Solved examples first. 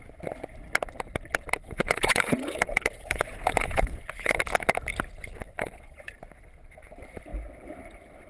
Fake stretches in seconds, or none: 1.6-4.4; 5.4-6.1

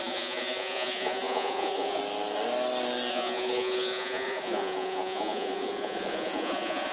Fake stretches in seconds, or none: 0.0-2.0; 3.1-6.9